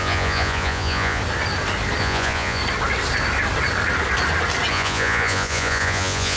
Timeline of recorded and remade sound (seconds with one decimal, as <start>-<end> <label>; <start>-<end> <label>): 0.0-1.2 remade; 1.2-2.0 recorded; 2.0-2.6 remade; 2.6-4.7 recorded; 4.7-6.4 remade